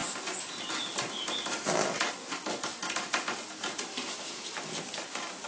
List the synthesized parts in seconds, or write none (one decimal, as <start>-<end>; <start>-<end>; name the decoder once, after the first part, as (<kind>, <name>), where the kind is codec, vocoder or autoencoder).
none